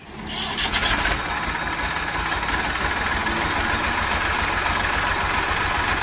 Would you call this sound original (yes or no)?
yes